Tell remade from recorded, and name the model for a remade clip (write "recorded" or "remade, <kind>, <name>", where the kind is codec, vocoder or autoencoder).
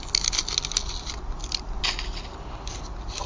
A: recorded